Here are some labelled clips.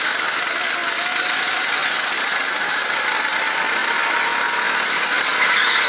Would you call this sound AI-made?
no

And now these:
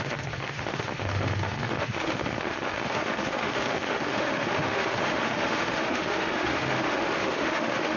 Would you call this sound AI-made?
yes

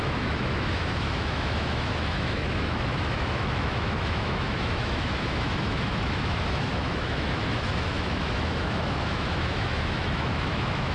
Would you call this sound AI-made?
yes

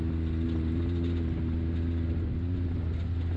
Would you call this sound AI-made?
no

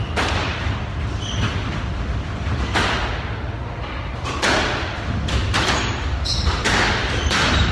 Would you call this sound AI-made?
no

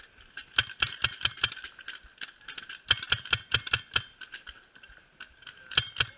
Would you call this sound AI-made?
no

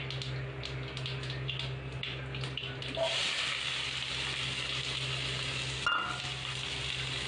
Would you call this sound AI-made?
no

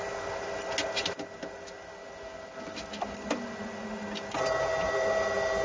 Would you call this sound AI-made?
no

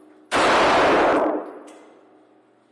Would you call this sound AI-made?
no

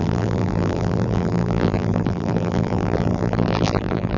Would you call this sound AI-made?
yes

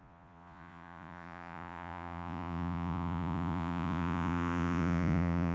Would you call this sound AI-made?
yes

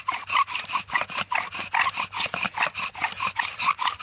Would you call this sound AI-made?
no